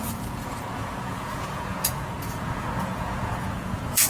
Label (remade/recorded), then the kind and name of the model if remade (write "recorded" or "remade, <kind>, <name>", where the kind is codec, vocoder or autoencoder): remade, vocoder, Vocos